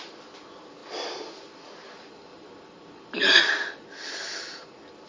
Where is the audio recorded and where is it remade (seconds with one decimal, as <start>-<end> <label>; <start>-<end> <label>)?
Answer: 0.0-2.3 recorded; 2.3-3.4 remade; 3.4-5.1 recorded